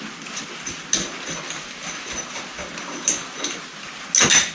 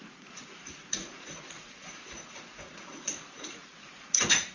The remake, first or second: second